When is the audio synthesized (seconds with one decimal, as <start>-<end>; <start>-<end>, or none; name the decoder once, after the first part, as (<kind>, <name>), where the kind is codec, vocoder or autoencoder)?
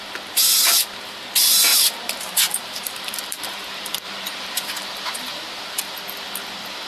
1.7-5.8 (vocoder, BigVGAN v2)